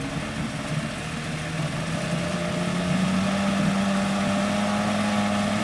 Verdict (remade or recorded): recorded